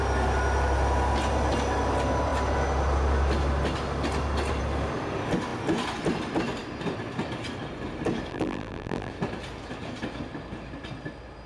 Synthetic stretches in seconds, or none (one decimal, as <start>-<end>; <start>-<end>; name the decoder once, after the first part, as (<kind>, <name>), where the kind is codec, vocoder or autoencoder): 8.3-9.1 (vocoder, BigVGAN v2)